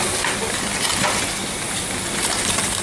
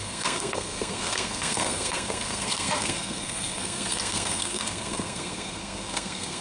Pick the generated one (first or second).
second